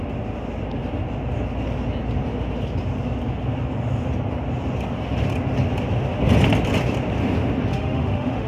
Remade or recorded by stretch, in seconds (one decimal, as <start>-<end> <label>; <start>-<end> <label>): 0.0-7.7 recorded; 7.7-8.5 remade